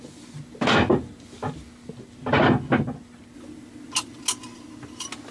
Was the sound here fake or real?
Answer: real